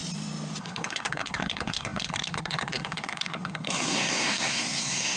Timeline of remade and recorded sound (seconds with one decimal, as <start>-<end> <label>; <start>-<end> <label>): 0.0-0.6 recorded; 0.6-5.2 remade